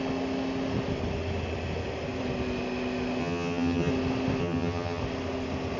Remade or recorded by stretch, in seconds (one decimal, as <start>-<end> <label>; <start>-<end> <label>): 0.0-3.2 recorded; 3.2-3.9 remade; 3.9-4.4 recorded; 4.4-5.0 remade; 5.0-5.8 recorded